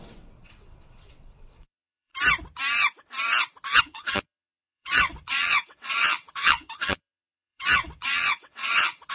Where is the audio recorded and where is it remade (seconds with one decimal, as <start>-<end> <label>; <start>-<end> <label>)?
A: 0.0-2.1 remade; 2.1-3.8 recorded; 3.8-9.1 remade